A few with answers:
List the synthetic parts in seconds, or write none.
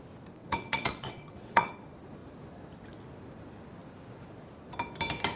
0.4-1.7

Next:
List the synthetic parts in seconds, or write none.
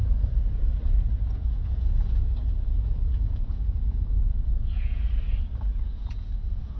1.4-5.0; 5.7-6.8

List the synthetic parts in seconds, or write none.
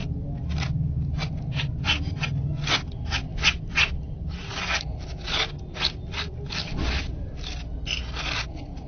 none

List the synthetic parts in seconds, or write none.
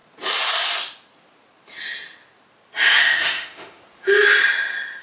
3.0-3.8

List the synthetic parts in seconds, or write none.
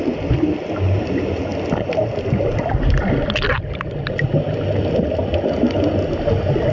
none